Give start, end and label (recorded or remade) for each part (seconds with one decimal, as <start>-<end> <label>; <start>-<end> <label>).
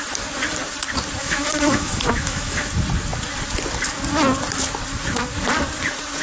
0.0-1.2 recorded; 1.2-2.7 remade; 2.7-6.2 recorded